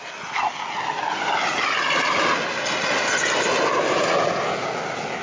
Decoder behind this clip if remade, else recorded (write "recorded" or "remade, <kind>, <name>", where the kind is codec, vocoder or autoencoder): recorded